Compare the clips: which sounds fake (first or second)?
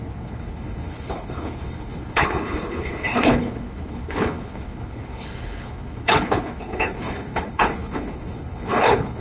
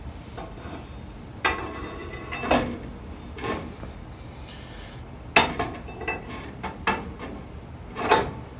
first